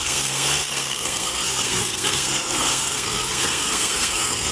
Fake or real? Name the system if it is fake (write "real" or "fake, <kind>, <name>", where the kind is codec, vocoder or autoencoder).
fake, codec, SNAC